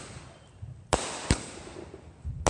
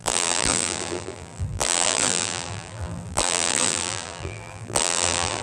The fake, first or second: second